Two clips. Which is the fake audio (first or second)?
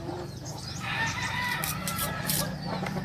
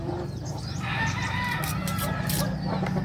first